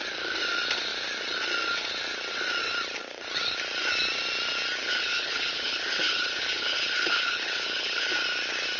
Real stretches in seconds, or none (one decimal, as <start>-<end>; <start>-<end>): 0.0-4.8; 8.1-8.8